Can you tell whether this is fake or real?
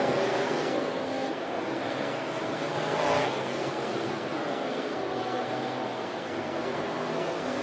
fake